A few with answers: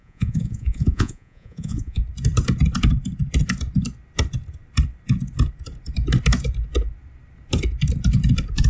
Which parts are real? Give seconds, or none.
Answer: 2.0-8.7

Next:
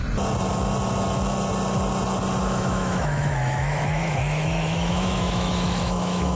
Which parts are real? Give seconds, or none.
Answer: 0.0-2.4